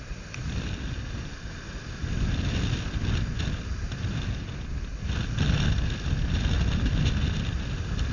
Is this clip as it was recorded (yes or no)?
yes